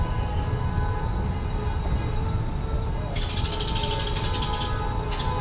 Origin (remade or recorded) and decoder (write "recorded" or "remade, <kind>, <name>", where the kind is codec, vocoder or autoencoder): recorded